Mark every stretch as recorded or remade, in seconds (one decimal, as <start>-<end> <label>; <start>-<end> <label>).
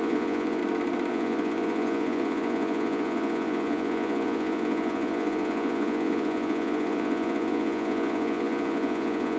0.0-0.6 remade; 0.6-1.1 recorded; 1.1-9.4 remade